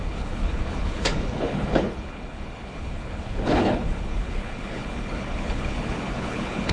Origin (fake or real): fake